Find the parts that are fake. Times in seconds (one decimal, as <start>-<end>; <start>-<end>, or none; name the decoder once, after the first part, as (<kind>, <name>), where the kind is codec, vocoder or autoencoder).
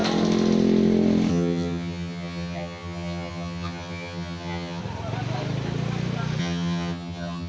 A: 1.3-4.8 (vocoder, HiFi-GAN); 6.4-7.5